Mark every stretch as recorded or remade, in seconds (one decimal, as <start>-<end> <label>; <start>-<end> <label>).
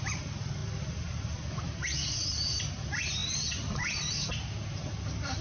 0.0-5.4 recorded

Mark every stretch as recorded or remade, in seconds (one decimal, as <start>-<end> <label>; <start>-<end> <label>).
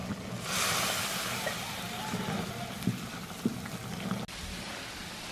0.0-5.3 recorded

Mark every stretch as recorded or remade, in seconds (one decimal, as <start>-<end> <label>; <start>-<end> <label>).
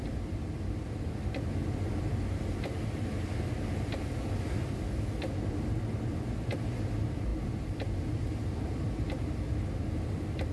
0.0-1.6 recorded; 1.6-2.1 remade; 2.1-10.5 recorded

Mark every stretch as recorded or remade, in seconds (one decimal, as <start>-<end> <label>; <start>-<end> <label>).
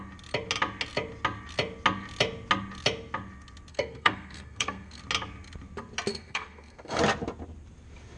0.0-3.7 recorded; 3.7-5.0 remade; 5.0-6.1 recorded; 6.1-7.0 remade; 7.0-8.2 recorded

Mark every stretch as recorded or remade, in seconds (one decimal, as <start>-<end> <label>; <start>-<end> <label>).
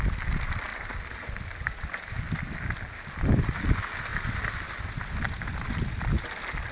0.0-0.7 recorded; 0.7-1.3 remade; 1.3-4.1 recorded; 4.1-6.0 remade; 6.0-6.7 recorded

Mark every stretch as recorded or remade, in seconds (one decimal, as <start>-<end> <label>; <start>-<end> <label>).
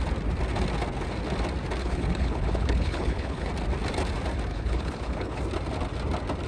0.0-1.8 recorded; 1.8-3.5 remade; 3.5-4.5 recorded; 4.5-5.4 remade; 5.4-6.5 recorded